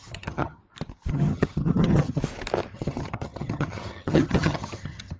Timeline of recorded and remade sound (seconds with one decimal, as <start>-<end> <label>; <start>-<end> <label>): 0.0-0.6 remade; 0.6-1.1 recorded; 1.1-2.2 remade; 2.2-2.7 recorded; 2.7-5.2 remade